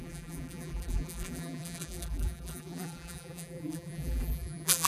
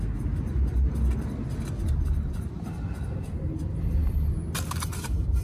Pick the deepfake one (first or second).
first